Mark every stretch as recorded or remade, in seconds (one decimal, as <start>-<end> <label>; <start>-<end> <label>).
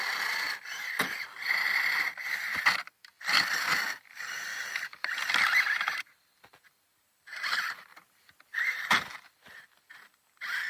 0.0-7.9 remade; 7.9-8.6 recorded; 8.6-10.7 remade